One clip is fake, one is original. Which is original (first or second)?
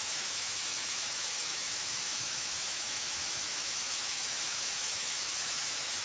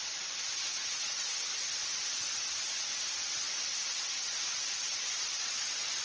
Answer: second